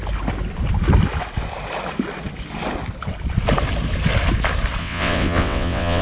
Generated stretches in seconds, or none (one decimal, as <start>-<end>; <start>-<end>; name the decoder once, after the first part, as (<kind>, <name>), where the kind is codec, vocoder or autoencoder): 4.8-6.0 (vocoder, WaveNeXt)